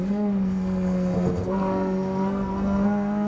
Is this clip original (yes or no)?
no